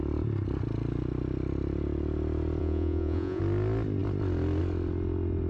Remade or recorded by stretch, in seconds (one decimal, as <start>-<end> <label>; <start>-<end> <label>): 0.0-2.6 recorded; 2.6-3.4 remade; 3.4-5.5 recorded